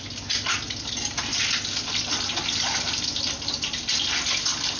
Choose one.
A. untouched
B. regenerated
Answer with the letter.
A